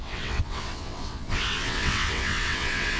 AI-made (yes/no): yes